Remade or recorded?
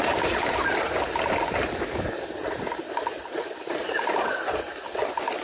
remade